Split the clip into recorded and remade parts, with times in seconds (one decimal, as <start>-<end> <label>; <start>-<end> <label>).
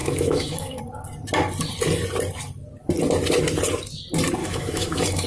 0.0-0.8 remade; 0.8-4.4 recorded; 4.4-5.3 remade